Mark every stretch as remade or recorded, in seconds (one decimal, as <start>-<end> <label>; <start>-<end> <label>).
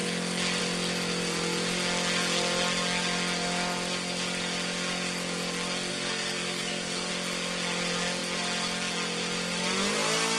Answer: 0.0-5.9 recorded; 5.9-7.1 remade; 7.1-10.4 recorded